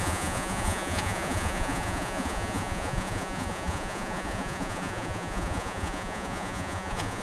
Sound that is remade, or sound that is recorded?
remade